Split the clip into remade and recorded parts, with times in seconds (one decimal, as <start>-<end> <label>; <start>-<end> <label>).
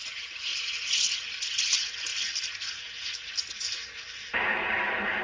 0.0-5.2 recorded